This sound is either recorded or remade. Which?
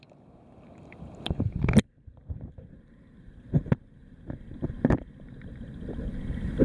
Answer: remade